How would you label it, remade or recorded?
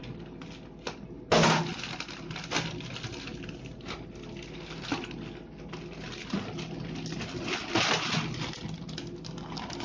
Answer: recorded